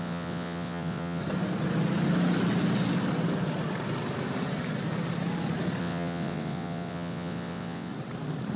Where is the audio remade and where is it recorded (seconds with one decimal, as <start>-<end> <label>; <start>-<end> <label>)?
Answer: 0.0-1.2 remade; 1.2-5.8 recorded; 5.8-7.9 remade; 7.9-8.6 recorded